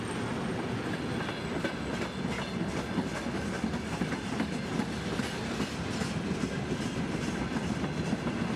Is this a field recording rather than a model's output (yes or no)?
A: yes